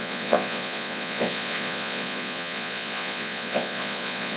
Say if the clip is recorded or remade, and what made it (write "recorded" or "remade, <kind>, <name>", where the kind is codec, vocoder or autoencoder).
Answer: remade, vocoder, Vocos